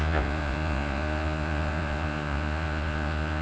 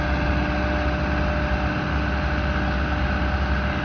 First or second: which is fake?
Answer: first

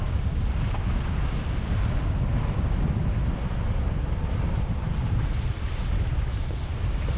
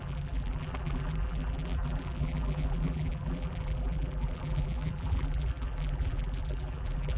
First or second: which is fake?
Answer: second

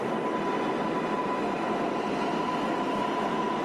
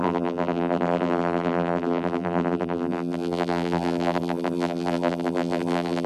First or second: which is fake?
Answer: second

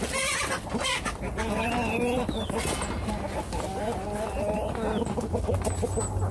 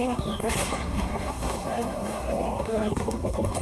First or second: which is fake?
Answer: second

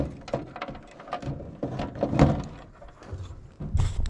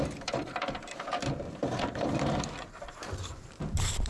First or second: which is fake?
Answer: second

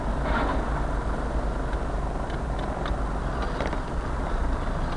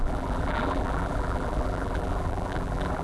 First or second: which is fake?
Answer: second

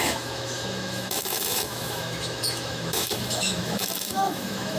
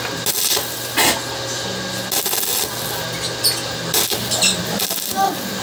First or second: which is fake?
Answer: first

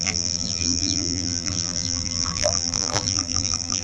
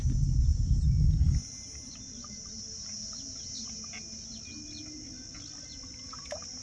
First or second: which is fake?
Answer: first